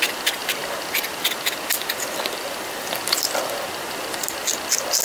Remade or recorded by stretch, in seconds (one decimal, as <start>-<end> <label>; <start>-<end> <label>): 0.0-5.0 recorded